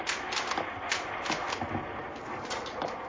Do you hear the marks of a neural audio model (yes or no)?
no